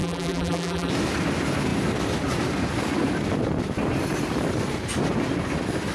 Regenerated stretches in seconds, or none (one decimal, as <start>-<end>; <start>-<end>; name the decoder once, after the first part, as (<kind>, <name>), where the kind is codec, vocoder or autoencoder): 0.0-0.9 (vocoder, BigVGAN v2)